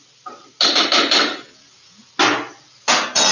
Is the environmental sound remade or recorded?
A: recorded